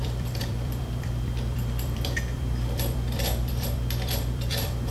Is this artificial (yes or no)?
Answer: yes